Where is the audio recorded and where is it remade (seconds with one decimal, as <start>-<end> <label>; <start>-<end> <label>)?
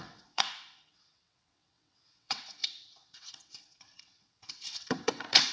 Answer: 0.0-5.5 remade